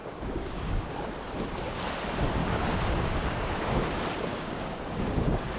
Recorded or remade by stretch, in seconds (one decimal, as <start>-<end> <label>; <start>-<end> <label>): 0.0-0.9 remade; 0.9-2.4 recorded; 2.4-3.8 remade; 3.8-4.3 recorded; 4.3-5.6 remade